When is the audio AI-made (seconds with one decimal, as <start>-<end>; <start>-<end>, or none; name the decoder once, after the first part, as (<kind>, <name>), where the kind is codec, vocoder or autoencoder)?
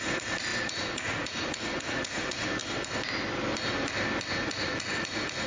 0.0-2.6 (vocoder, Vocos); 4.3-5.5